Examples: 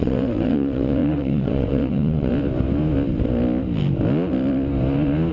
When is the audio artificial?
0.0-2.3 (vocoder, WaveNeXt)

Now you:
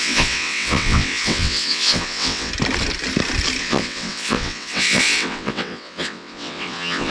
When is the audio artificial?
0.0-2.5 (vocoder, WaveNeXt); 3.6-7.1

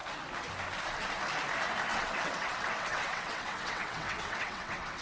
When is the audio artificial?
1.9-5.0 (vocoder, WaveNeXt)

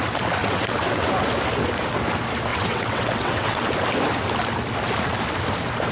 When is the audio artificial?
0.4-1.1 (vocoder, WaveNeXt); 2.5-3.6

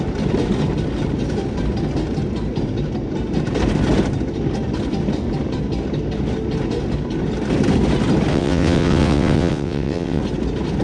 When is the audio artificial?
8.3-10.2 (vocoder, WaveNeXt)

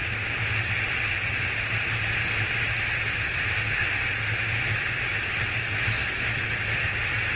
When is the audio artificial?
none

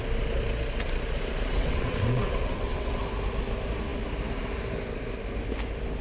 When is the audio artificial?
1.5-3.0 (vocoder, WaveNeXt)